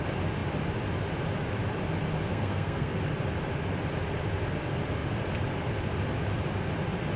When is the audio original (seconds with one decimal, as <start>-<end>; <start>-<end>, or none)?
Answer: 0.0-2.3; 3.0-7.2